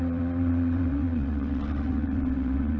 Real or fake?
fake